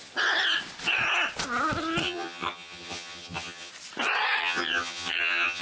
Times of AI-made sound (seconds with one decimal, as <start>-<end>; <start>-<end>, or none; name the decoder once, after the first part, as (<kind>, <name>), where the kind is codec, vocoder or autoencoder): 2.0-3.7 (vocoder, HiFi-GAN); 4.4-5.6